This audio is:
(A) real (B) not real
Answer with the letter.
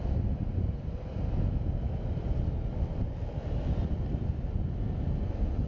A